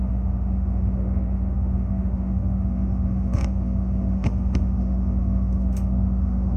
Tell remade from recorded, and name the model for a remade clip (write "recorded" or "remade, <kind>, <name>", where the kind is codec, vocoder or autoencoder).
remade, autoencoder, DAC-VAE